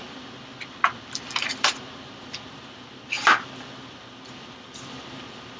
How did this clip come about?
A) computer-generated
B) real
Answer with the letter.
A